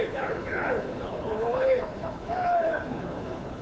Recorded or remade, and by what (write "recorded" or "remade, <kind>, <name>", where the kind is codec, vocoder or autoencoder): remade, codec, HILCodec